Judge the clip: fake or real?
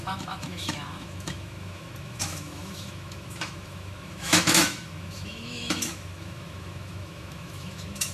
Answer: fake